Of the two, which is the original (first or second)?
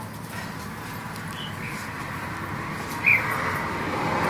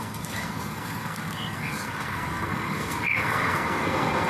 first